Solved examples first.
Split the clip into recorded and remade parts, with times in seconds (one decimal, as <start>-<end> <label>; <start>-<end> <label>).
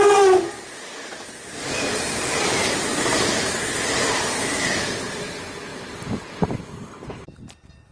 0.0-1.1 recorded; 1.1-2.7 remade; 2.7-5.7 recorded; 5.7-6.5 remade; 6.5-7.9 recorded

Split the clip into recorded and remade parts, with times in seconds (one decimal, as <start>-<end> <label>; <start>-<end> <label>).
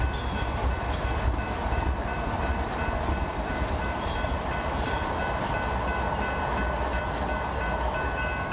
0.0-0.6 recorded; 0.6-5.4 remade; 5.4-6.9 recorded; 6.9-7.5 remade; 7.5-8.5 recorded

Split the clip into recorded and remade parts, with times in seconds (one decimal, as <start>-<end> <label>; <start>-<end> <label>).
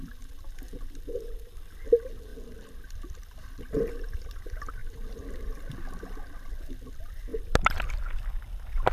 0.0-2.3 recorded; 2.3-3.9 remade; 3.9-8.9 recorded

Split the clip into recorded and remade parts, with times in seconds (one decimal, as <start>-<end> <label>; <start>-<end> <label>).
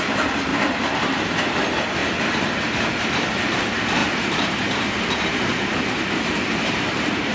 0.0-0.5 recorded; 0.5-1.3 remade; 1.3-2.0 recorded; 2.0-3.6 remade; 3.6-4.0 recorded; 4.0-7.3 remade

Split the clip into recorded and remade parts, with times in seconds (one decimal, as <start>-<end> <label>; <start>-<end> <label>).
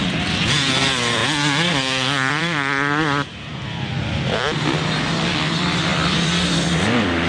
0.0-1.2 remade; 1.2-2.3 recorded; 2.3-7.3 remade